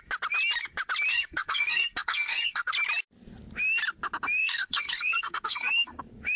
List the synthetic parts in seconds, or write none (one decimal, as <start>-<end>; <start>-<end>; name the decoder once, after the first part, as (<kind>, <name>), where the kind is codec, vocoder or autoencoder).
1.1-2.7 (codec, SNAC); 4.4-6.0